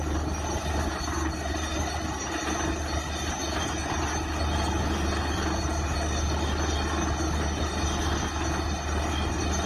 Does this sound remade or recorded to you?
recorded